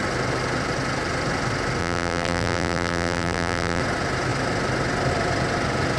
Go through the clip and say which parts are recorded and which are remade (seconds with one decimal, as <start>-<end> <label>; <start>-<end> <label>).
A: 0.0-1.8 recorded; 1.8-3.8 remade; 3.8-6.0 recorded